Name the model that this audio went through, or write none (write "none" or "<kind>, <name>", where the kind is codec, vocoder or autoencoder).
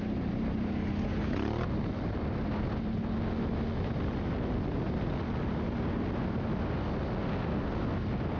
none